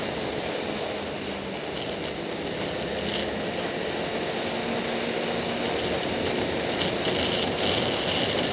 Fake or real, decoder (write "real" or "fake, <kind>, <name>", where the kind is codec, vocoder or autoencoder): real